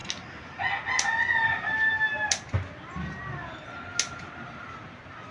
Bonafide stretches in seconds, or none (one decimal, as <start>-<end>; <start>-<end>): 0.0-5.3